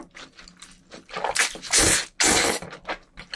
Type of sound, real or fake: real